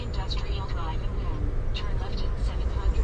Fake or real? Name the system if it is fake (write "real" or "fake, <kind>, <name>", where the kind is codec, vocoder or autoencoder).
real